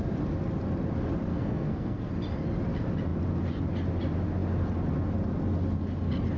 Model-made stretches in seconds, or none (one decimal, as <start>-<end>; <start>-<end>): 1.3-2.1